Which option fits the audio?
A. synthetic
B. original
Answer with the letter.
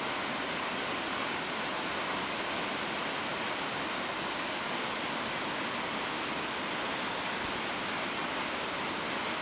B